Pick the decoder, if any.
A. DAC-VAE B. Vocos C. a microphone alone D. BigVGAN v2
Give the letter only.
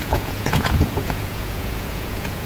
B